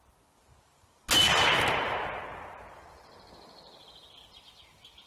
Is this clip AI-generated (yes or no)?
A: no